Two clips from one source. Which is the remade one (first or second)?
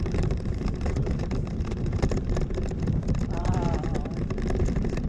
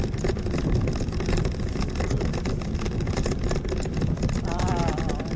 first